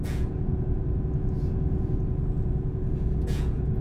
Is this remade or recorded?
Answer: remade